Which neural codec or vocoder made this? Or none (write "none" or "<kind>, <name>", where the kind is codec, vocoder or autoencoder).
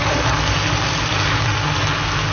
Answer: none